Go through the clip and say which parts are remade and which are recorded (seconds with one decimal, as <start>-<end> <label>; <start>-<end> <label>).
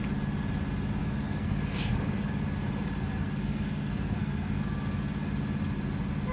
0.0-1.0 recorded; 1.0-2.3 remade; 2.3-3.2 recorded; 3.2-4.6 remade; 4.6-6.3 recorded